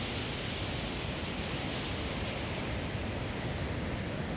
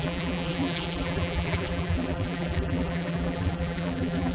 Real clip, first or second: first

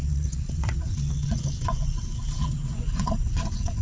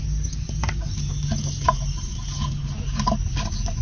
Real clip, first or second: second